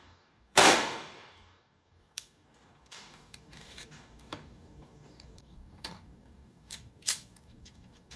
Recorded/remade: remade